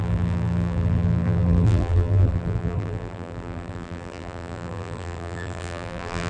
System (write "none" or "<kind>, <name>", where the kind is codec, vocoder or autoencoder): vocoder, BigVGAN v2